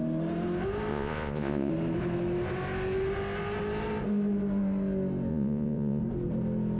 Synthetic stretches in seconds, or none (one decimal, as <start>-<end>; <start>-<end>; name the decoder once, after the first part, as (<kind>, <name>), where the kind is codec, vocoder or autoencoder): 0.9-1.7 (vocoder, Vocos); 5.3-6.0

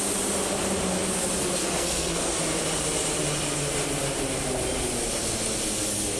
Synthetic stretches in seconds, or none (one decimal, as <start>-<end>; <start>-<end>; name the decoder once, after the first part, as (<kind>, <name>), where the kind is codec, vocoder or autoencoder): 1.6-2.3 (codec, SNAC)

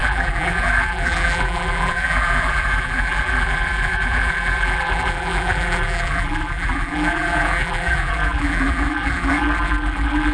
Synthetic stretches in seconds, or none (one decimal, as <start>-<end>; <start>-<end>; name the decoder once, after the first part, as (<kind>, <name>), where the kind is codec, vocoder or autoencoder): 0.0-10.3 (vocoder, BigVGAN v2)